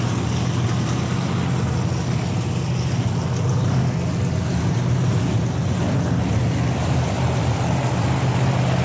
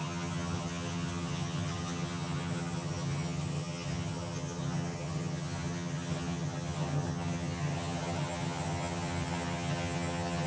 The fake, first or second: second